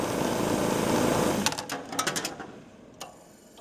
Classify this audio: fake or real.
real